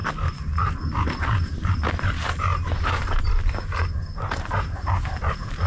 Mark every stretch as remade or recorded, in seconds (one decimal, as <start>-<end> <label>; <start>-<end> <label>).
0.0-1.2 recorded; 1.2-5.7 remade